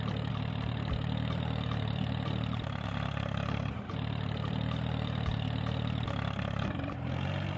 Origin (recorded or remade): remade